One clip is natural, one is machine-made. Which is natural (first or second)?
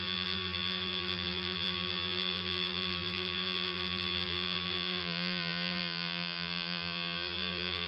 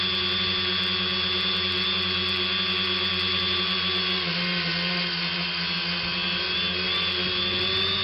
second